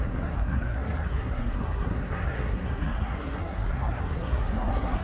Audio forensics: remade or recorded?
remade